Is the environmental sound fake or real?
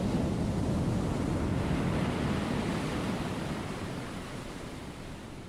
real